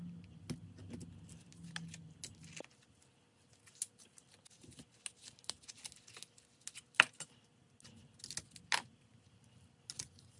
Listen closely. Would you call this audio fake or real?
real